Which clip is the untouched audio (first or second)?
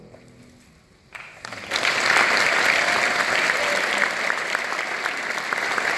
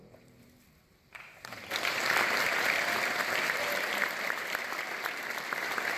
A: first